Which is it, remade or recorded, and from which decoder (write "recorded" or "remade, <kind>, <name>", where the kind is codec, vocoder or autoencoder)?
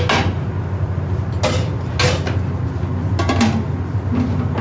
recorded